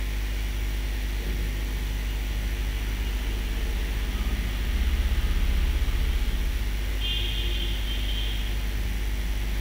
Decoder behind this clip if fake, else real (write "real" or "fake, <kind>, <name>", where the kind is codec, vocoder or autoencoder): real